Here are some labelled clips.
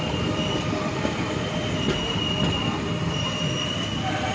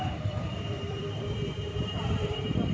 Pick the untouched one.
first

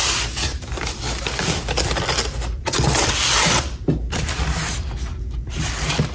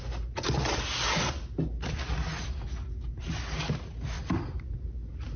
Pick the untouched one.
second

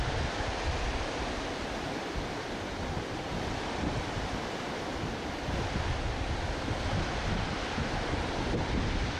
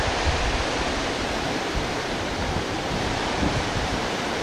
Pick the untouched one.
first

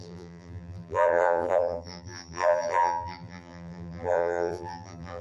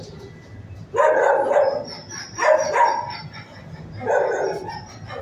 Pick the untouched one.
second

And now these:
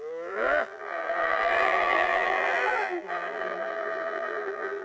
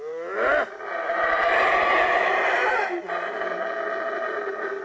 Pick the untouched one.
second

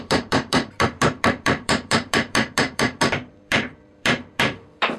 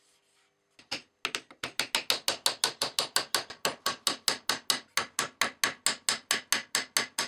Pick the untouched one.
second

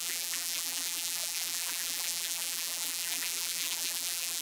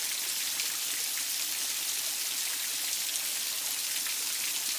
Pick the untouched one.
second